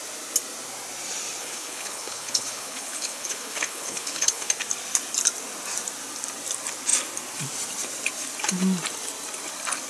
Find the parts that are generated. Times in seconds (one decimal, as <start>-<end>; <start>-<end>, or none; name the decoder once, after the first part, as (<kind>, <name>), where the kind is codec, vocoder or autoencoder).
1.4-4.5 (codec, HILCodec)